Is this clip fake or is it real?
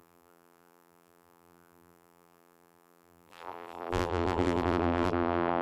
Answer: fake